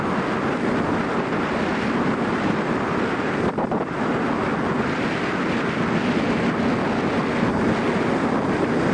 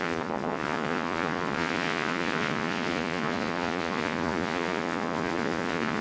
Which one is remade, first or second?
second